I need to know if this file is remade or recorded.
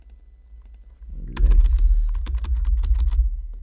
recorded